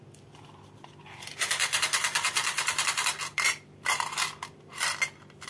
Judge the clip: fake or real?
fake